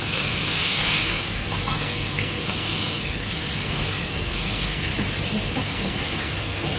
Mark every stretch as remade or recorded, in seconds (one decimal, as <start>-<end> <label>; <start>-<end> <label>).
0.0-4.9 remade; 4.9-5.6 recorded; 5.6-6.8 remade